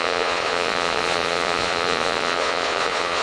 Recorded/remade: remade